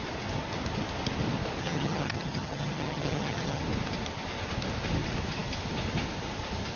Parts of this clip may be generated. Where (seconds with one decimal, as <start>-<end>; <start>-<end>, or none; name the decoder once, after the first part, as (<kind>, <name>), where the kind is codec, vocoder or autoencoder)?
1.6-3.6 (vocoder, HiFi-GAN)

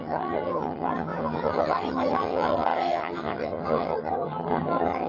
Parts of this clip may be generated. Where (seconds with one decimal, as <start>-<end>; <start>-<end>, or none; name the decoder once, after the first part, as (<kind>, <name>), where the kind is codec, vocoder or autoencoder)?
0.0-5.1 (vocoder, HiFi-GAN)

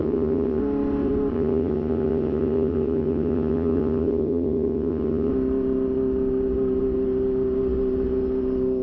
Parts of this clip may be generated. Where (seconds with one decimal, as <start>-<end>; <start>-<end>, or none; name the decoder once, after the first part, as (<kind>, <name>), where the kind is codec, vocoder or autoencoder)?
0.0-0.6 (vocoder, HiFi-GAN); 1.3-5.3

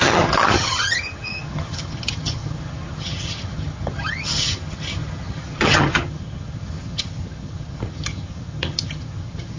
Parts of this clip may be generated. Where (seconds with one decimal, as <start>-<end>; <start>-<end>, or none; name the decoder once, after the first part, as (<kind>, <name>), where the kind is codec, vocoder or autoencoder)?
0.0-9.6 (vocoder, HiFi-GAN)

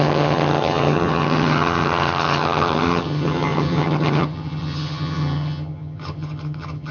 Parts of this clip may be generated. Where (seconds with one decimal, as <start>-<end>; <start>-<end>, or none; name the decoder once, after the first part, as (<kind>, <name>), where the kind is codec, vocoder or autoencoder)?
0.0-6.9 (vocoder, HiFi-GAN)

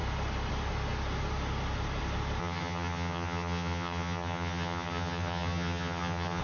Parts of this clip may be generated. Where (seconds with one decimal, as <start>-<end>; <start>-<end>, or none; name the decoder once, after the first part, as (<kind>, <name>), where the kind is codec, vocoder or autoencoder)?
2.4-6.4 (vocoder, HiFi-GAN)